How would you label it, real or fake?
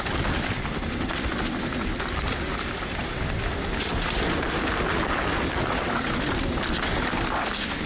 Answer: real